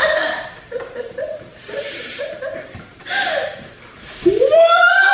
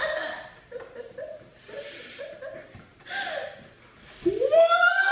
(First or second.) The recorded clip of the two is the second